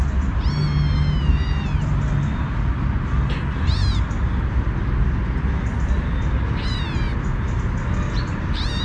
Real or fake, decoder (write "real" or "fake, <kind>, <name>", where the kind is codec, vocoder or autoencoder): real